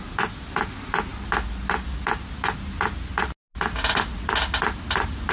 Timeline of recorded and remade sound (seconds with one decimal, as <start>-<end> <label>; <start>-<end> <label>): 0.0-5.3 recorded